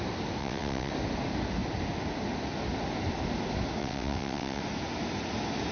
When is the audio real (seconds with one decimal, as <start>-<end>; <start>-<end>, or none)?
0.0-0.4; 0.9-3.8; 4.6-5.7